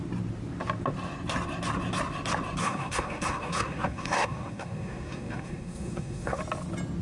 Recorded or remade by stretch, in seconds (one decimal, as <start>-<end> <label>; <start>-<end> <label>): 0.0-2.6 recorded; 2.6-6.4 remade; 6.4-7.0 recorded